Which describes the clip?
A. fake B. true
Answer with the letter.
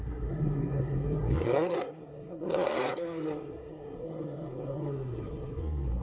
A